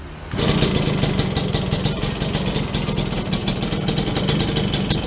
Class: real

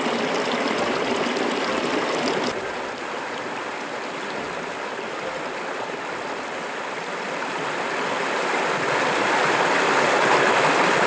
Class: real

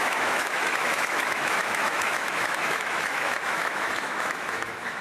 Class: fake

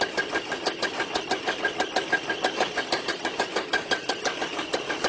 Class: real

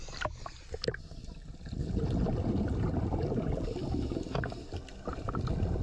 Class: real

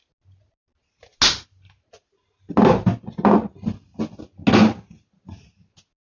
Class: real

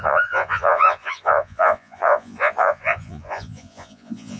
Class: fake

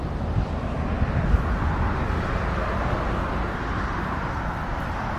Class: real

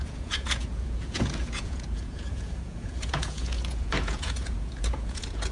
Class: fake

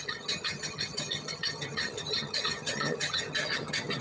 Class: fake